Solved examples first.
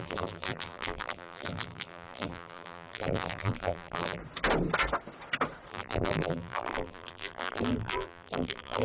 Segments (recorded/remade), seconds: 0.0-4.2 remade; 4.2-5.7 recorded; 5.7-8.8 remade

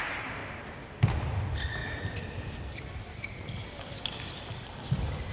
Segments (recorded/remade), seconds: 0.0-0.4 recorded; 0.4-1.0 remade; 1.0-1.8 recorded; 1.8-5.3 remade